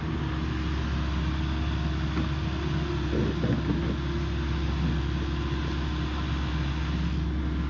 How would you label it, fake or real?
real